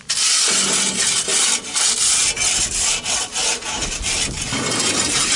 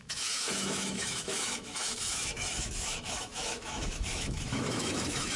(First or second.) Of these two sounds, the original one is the first